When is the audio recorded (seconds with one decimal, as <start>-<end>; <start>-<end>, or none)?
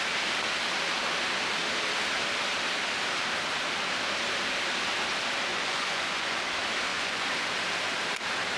0.0-5.5; 6.4-6.9; 7.5-8.6